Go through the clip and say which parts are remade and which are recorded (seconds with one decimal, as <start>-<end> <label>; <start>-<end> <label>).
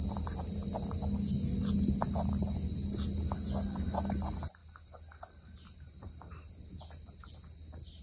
0.0-8.0 recorded